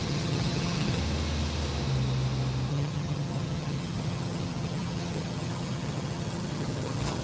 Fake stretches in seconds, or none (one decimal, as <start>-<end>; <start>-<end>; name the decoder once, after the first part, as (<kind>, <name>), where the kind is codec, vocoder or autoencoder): 0.0-1.0 (vocoder, HiFi-GAN); 2.7-7.2